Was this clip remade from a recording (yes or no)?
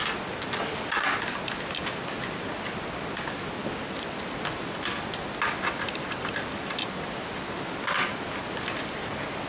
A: no